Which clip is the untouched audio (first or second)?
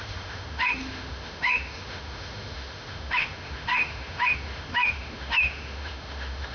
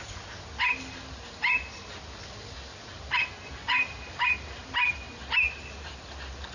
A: second